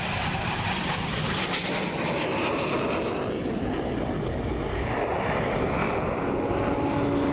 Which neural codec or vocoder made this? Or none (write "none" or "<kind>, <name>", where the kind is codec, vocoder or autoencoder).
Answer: none